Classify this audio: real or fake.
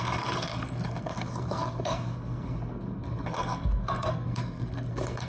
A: fake